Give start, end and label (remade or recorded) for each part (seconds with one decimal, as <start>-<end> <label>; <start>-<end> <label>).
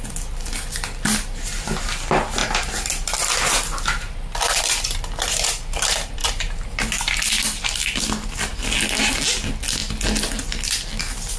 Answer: 0.0-6.2 recorded; 6.2-7.0 remade; 7.0-11.4 recorded